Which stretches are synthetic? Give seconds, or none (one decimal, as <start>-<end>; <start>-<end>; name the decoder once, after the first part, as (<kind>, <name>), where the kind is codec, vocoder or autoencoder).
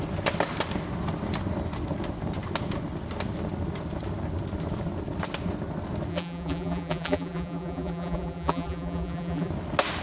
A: 6.1-9.5 (vocoder, BigVGAN v2)